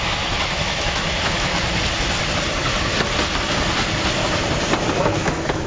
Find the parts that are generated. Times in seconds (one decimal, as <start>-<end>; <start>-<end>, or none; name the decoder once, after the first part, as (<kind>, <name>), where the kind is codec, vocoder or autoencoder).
0.0-1.5 (autoencoder, DAC-VAE); 4.9-5.7